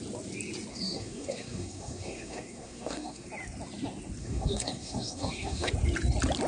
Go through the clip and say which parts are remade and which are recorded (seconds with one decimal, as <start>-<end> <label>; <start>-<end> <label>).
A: 0.0-0.7 recorded; 0.7-3.3 remade; 3.3-4.2 recorded; 4.2-5.7 remade; 5.7-6.5 recorded